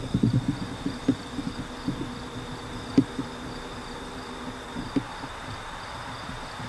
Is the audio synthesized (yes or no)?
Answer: no